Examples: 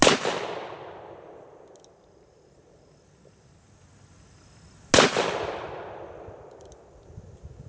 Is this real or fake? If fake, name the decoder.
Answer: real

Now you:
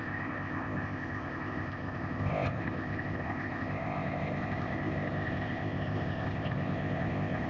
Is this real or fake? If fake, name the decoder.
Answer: fake, codec, ZipCodec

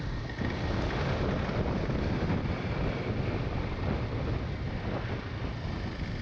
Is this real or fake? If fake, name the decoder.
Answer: real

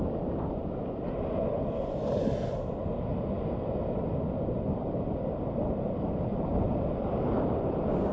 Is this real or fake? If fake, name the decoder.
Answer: real